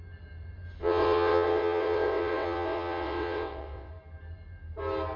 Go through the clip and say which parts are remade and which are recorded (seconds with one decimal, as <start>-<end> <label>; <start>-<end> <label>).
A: 0.0-0.8 recorded; 0.8-3.9 remade; 3.9-5.2 recorded